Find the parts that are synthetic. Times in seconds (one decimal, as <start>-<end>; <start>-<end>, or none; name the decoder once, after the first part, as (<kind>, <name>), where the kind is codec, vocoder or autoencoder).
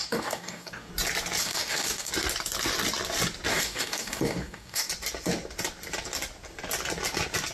0.0-0.9 (codec, DAC); 1.4-2.1; 3.5-4.9